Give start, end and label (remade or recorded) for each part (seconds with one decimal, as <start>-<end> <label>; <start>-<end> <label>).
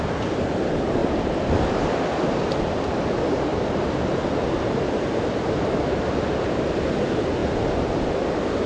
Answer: 0.0-1.0 recorded; 1.0-2.6 remade; 2.6-8.7 recorded